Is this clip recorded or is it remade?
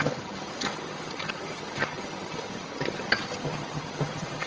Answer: remade